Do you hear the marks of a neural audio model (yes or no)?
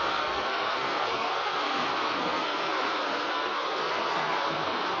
yes